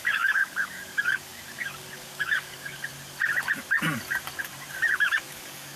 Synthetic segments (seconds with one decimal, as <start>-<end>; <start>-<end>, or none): 0.0-2.9; 4.9-5.8